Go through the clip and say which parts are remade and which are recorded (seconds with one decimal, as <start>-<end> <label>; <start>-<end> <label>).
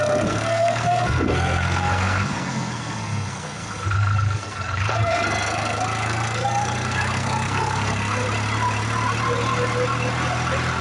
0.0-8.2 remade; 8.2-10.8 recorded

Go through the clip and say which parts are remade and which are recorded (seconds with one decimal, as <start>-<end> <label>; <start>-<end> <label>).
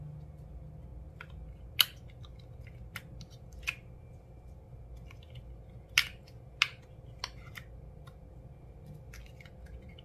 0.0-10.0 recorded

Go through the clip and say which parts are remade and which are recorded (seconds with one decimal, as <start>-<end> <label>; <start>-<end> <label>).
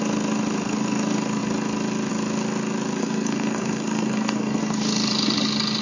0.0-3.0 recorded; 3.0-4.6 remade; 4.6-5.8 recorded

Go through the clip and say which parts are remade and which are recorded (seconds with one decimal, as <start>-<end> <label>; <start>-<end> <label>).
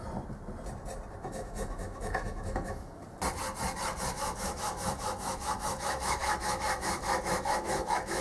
0.0-1.2 recorded; 1.2-3.0 remade; 3.0-4.1 recorded; 4.1-8.2 remade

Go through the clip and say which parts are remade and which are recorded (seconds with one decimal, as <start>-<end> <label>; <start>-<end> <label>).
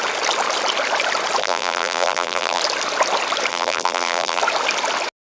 0.0-1.4 recorded; 1.4-2.6 remade; 2.6-3.5 recorded; 3.5-4.4 remade; 4.4-5.2 recorded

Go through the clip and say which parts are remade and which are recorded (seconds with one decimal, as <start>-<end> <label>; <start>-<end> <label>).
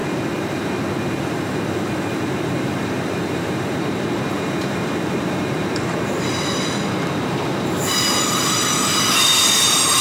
0.0-1.2 recorded; 1.2-10.0 remade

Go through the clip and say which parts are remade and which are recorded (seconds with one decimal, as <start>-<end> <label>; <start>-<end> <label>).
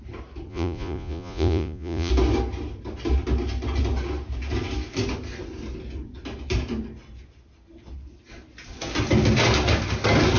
0.0-0.5 recorded; 0.5-2.1 remade; 2.1-10.4 recorded